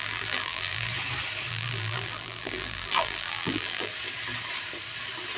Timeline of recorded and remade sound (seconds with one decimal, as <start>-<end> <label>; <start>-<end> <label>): 0.0-0.9 remade; 0.9-1.5 recorded; 1.5-3.9 remade; 3.9-5.4 recorded